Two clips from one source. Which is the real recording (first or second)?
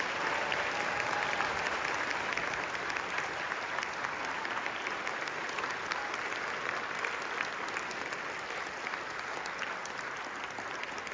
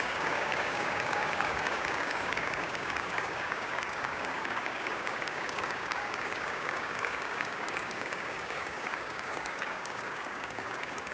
first